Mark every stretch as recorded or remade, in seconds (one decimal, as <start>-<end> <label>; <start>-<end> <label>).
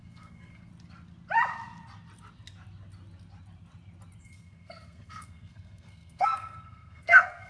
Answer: 0.0-0.7 remade; 0.7-4.2 recorded; 4.2-7.5 remade